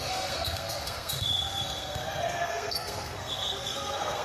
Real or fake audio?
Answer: fake